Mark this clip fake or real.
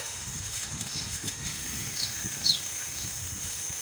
fake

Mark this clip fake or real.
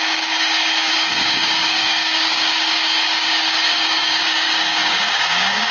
fake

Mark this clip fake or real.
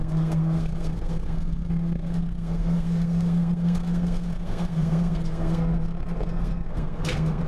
fake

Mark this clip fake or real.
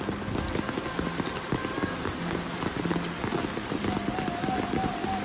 real